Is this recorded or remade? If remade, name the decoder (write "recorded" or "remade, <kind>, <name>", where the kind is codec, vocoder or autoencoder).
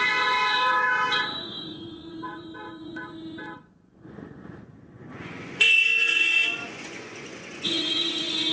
remade, vocoder, Vocos